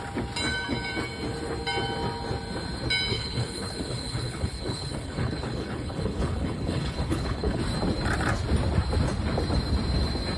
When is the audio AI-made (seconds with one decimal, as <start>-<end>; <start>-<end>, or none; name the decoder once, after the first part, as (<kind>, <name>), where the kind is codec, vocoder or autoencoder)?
3.1-7.6 (codec, HILCodec)